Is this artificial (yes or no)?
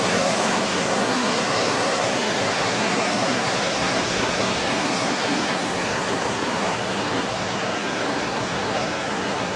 yes